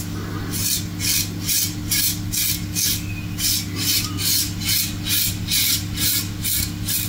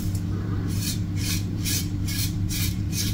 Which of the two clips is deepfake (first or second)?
second